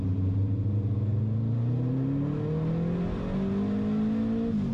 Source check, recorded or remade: recorded